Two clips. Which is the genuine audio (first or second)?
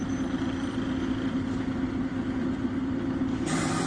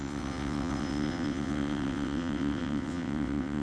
first